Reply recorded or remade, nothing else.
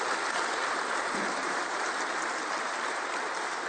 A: remade